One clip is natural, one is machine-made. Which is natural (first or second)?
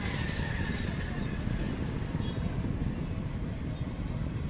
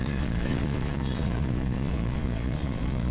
first